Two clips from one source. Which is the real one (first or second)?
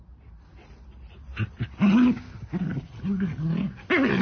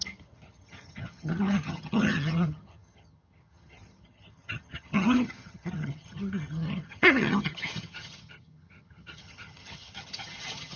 first